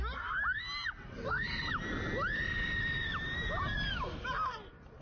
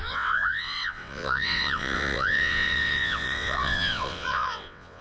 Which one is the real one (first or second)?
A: first